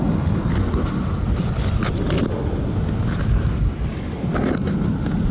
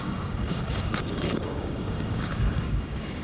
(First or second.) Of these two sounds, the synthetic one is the second